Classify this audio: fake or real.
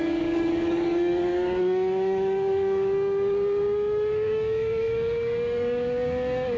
fake